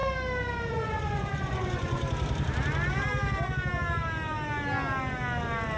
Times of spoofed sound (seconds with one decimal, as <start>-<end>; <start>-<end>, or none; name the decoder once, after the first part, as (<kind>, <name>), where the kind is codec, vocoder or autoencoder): 0.7-2.0 (vocoder, Vocos)